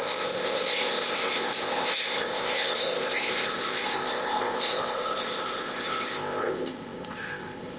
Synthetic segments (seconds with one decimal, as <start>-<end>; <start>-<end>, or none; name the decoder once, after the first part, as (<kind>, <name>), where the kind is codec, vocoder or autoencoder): 0.0-7.8 (codec, ZipCodec)